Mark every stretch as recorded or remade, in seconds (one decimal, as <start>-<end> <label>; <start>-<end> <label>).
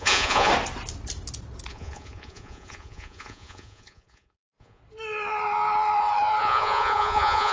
0.0-0.5 remade; 0.5-1.7 recorded; 1.7-4.8 remade; 4.8-6.4 recorded; 6.4-7.5 remade